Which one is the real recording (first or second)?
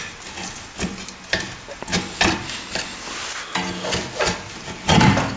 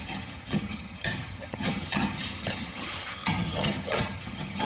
first